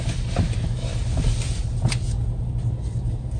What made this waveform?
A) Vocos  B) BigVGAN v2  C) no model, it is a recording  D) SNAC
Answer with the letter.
C